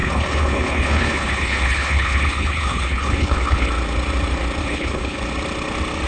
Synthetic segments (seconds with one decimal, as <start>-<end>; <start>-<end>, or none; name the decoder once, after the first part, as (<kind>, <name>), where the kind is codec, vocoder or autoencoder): 0.0-3.7 (codec, HILCodec); 4.6-5.2